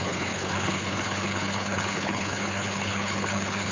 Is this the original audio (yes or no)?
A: no